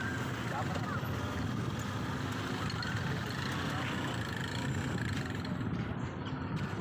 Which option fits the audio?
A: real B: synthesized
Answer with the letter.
A